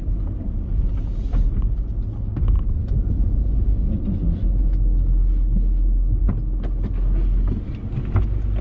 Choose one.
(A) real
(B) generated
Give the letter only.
A